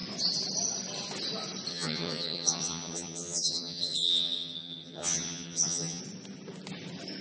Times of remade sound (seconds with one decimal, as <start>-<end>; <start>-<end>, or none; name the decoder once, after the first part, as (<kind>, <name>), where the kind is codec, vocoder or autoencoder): 1.7-6.0 (vocoder, HiFi-GAN)